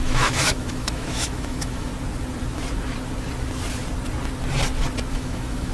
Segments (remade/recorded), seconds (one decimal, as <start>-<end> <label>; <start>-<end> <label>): 0.0-1.9 remade; 1.9-5.1 recorded; 5.1-5.7 remade